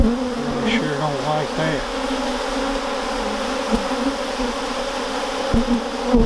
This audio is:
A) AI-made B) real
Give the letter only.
B